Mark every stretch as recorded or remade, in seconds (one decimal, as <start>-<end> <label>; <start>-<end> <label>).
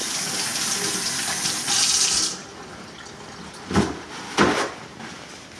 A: 0.0-5.6 recorded